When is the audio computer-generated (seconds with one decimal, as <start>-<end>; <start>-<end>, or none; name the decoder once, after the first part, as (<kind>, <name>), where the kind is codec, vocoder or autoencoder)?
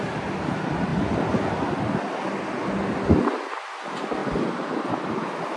none